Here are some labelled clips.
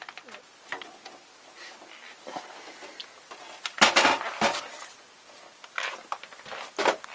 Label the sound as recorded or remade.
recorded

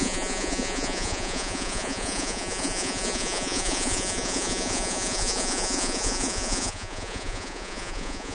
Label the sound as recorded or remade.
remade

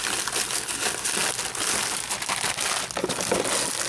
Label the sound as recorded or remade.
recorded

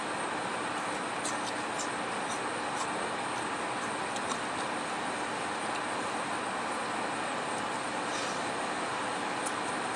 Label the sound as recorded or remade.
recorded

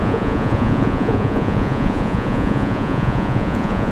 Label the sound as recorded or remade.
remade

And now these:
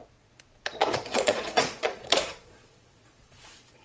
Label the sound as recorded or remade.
remade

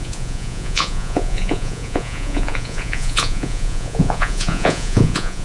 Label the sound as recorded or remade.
remade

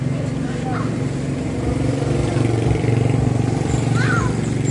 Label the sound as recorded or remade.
recorded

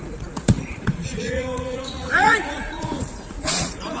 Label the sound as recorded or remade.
remade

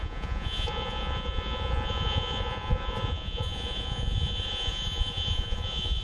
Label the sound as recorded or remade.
remade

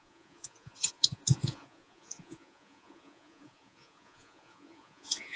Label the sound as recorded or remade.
remade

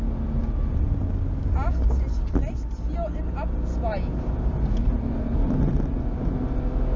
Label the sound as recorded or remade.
recorded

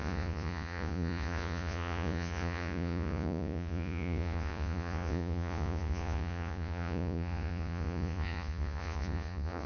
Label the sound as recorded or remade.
remade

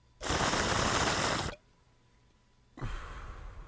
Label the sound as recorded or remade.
recorded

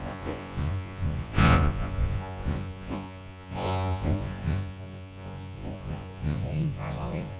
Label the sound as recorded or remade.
remade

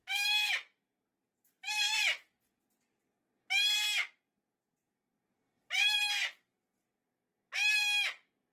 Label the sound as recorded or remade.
recorded